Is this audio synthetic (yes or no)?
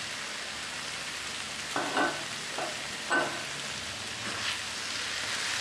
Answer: no